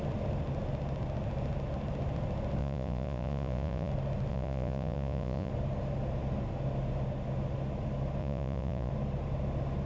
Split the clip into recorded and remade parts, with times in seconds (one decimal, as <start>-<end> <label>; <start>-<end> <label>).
0.0-2.6 recorded; 2.6-3.9 remade; 3.9-4.3 recorded; 4.3-5.5 remade; 5.5-8.2 recorded; 8.2-8.9 remade; 8.9-9.9 recorded